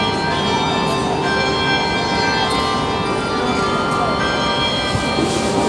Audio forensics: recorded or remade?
recorded